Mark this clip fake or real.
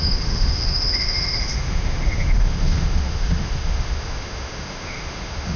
fake